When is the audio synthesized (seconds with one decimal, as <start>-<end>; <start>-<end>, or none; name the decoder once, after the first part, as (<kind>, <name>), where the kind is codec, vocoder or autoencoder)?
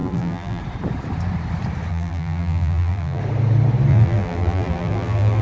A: 0.0-0.6 (vocoder, BigVGAN v2); 1.9-3.2; 3.9-5.4